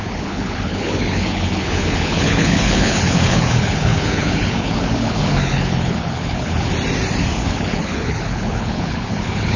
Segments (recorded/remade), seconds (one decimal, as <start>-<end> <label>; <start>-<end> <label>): 0.0-6.7 remade; 6.7-7.3 recorded; 7.3-9.6 remade